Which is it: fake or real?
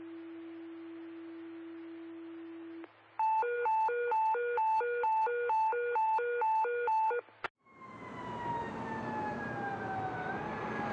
real